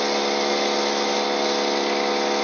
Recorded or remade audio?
recorded